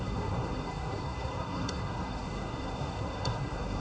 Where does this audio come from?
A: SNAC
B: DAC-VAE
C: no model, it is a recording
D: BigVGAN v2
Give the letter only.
A